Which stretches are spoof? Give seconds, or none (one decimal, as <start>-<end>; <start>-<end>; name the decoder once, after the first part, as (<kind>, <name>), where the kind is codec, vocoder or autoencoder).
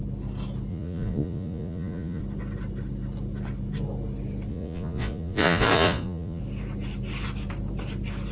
0.7-2.2 (vocoder, Vocos); 4.5-6.4